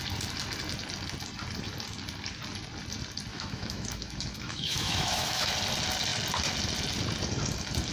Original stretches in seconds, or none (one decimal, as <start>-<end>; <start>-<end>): 0.0-3.3; 5.5-7.9